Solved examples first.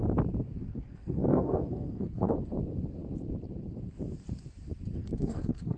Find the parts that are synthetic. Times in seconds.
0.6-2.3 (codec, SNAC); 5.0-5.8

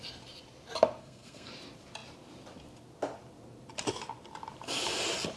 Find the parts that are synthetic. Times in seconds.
1.0-1.5 (codec, SNAC)

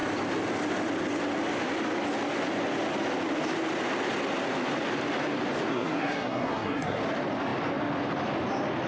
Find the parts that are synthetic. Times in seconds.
5.7-7.0 (codec, SNAC)

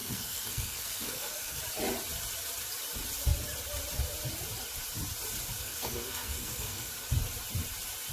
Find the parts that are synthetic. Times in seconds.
0.0-1.6 (codec, SNAC); 5.6-6.9